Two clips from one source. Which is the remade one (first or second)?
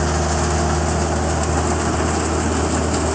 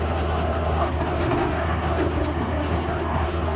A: second